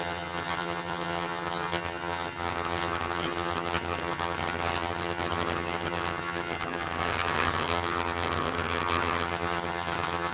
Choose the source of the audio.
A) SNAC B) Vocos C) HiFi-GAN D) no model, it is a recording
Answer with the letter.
C